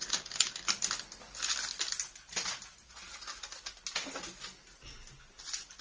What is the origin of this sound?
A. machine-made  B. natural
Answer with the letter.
B